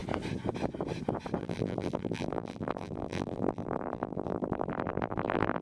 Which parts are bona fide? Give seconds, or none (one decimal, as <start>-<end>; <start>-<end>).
0.0-1.4